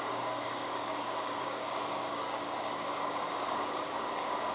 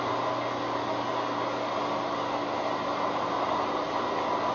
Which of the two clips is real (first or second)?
second